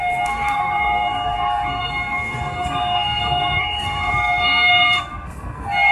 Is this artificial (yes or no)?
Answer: yes